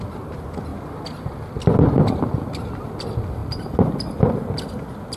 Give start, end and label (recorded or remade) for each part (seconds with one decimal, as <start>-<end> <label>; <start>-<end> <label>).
0.0-5.2 recorded